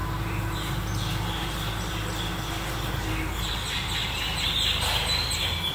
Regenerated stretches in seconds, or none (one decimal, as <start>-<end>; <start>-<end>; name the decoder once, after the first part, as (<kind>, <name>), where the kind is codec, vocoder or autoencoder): 0.0-3.4 (vocoder, BigVGAN v2)